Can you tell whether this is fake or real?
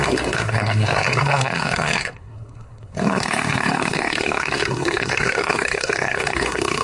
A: fake